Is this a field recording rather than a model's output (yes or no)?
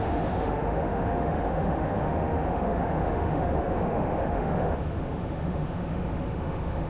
no